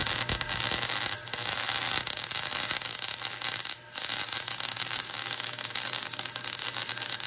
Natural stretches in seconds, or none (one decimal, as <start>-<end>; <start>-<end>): 0.0-5.2; 5.8-7.3